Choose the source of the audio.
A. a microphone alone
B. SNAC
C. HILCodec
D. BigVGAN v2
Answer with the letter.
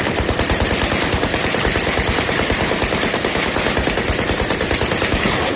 A